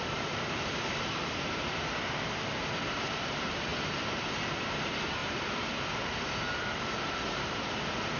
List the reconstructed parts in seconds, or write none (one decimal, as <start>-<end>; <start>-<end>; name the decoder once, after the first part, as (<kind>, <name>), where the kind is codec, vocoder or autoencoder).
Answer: 0.0-3.7 (vocoder, BigVGAN v2); 4.5-5.2; 6.6-8.2

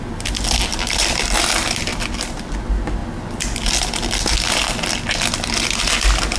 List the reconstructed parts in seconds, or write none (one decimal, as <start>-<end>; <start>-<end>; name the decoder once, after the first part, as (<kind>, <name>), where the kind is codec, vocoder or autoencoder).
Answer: 0.7-1.2 (vocoder, BigVGAN v2); 1.9-2.5